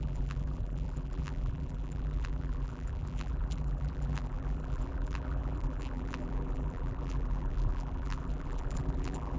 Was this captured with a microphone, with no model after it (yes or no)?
no